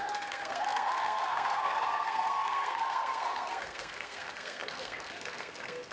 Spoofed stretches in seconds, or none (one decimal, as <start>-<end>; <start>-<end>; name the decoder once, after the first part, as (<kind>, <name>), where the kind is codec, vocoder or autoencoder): 0.0-5.9 (codec, SNAC)